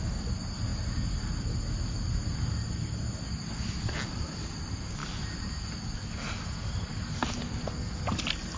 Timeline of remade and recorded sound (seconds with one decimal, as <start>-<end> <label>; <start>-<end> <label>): 0.0-8.6 recorded